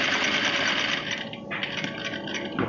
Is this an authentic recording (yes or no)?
yes